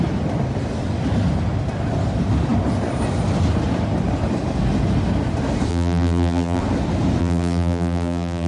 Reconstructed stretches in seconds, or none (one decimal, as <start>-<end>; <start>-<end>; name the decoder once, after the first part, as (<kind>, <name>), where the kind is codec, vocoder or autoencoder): 5.7-6.6 (vocoder, BigVGAN v2); 7.2-8.5